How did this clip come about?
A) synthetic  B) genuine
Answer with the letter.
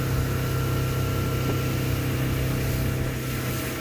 B